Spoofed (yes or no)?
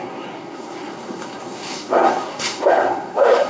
yes